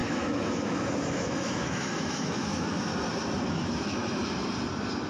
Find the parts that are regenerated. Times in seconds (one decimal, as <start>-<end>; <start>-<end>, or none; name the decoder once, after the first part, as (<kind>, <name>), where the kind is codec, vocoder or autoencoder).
0.0-2.9 (autoencoder, DAC-VAE); 3.5-4.2